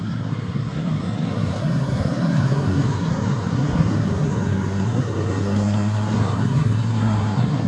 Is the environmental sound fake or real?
fake